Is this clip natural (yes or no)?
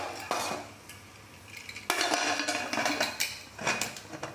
yes